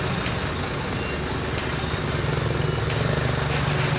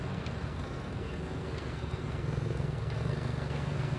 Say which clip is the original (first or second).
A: first